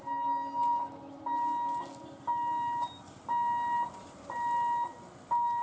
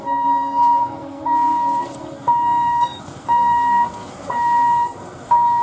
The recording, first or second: first